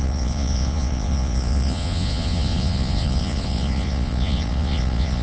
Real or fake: fake